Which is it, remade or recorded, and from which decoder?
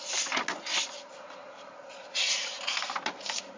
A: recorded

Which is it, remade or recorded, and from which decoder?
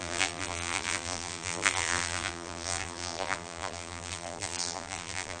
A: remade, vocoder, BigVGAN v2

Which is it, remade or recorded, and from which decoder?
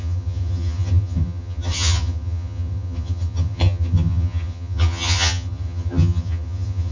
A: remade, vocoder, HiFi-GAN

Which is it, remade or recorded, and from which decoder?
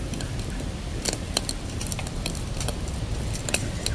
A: recorded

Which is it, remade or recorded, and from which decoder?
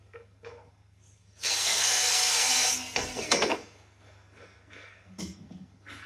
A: remade, codec, SNAC